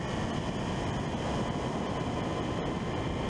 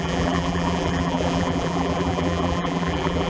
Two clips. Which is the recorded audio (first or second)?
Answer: first